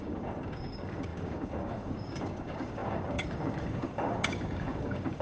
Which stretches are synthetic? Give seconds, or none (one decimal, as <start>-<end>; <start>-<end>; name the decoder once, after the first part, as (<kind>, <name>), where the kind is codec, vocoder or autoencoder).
0.0-5.2 (codec, DAC)